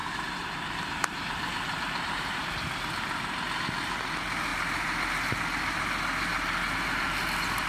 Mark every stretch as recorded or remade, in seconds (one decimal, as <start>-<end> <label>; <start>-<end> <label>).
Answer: 0.0-2.5 remade; 2.5-4.5 recorded; 4.5-5.4 remade; 5.4-6.3 recorded; 6.3-7.2 remade; 7.2-7.7 recorded